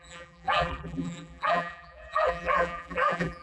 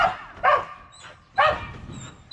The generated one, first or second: first